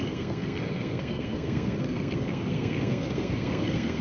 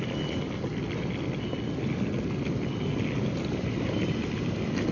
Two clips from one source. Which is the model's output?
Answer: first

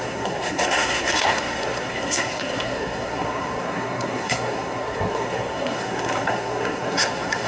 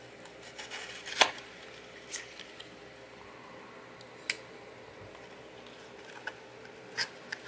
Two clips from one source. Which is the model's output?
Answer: first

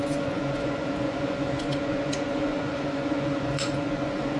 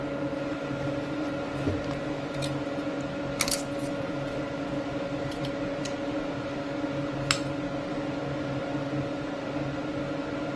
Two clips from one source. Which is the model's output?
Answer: first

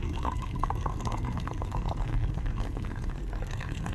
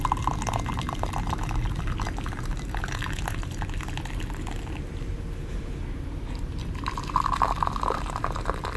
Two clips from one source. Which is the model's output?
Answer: first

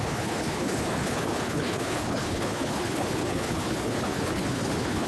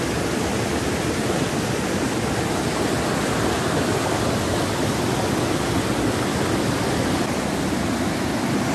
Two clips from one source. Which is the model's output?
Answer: first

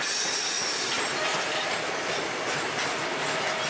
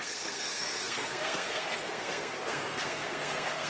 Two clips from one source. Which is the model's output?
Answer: second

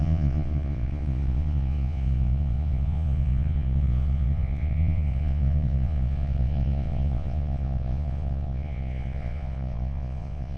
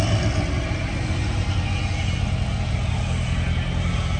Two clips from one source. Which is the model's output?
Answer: first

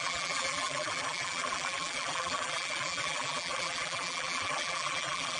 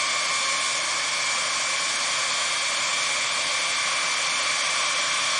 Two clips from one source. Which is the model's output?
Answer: first